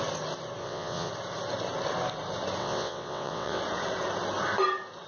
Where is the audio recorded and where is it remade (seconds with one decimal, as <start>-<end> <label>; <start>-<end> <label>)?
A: 0.0-0.6 recorded; 0.6-1.1 remade; 1.1-2.6 recorded; 2.6-3.6 remade; 3.6-5.1 recorded